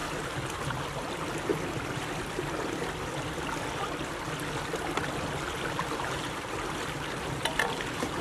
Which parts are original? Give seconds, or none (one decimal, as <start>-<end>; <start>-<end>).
0.0-8.2